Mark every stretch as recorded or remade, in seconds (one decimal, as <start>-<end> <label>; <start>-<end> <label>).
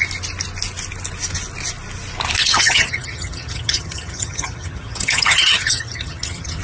0.0-2.4 recorded; 2.4-6.6 remade